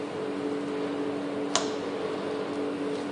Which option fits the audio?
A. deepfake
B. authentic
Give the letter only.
B